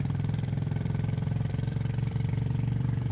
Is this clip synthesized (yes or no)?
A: yes